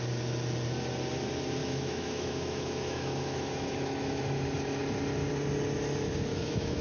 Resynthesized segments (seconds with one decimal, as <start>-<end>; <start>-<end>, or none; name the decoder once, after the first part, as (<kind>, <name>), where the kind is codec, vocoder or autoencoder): 1.6-4.2 (autoencoder, DAC-VAE); 6.3-6.8